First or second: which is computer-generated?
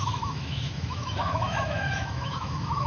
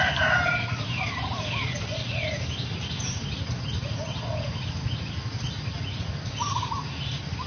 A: first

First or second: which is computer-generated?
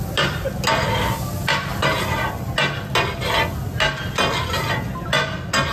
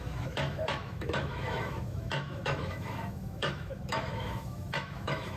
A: second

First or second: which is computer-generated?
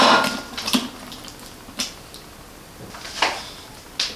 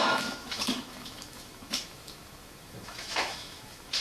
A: second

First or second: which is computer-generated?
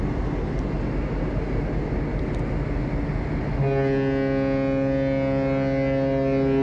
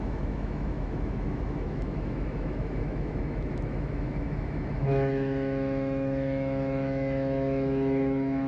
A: second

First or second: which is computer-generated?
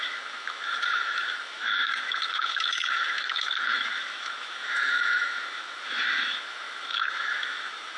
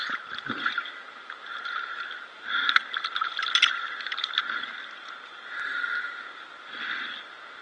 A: first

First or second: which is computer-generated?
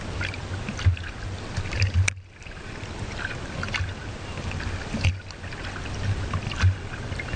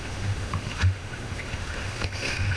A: second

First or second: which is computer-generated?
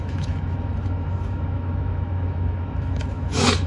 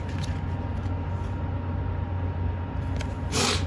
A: first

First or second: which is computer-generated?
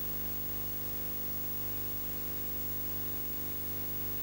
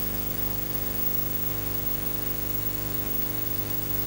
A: second